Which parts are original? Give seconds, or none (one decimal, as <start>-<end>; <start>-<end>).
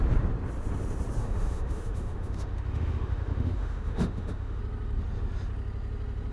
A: 0.0-1.2; 4.6-6.3